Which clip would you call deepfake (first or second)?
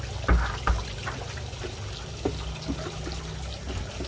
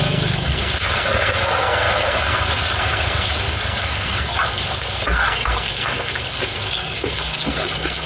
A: second